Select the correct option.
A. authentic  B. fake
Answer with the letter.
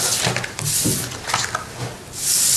A